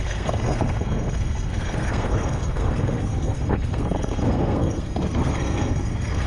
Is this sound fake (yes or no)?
yes